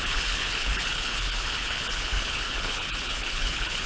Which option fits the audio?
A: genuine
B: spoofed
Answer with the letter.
B